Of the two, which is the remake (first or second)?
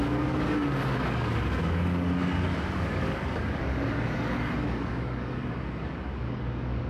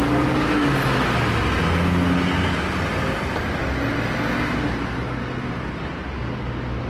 first